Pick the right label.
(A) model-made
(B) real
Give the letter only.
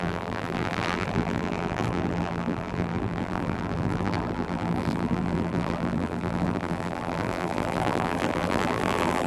A